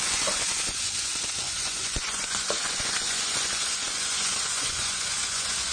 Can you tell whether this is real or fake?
fake